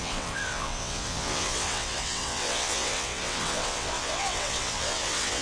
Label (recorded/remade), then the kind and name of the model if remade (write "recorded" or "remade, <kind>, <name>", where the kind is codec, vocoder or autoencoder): remade, vocoder, WaveNeXt